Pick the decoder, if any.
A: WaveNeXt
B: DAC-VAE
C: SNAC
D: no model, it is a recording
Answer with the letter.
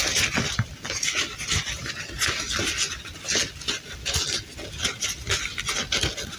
D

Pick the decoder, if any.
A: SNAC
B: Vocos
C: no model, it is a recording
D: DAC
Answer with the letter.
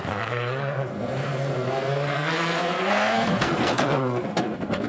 A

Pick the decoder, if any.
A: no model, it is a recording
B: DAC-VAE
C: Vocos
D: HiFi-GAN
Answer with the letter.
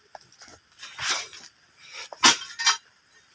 A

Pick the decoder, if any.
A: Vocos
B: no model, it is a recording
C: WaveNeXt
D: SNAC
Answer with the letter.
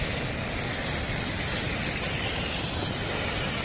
B